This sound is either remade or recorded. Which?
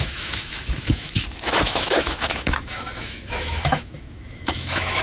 remade